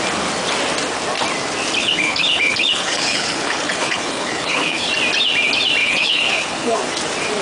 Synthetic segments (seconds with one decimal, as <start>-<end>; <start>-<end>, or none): 1.8-4.9; 5.8-6.8